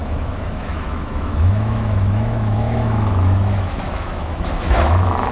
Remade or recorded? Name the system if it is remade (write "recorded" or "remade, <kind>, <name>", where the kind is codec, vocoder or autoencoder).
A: remade, autoencoder, DAC-VAE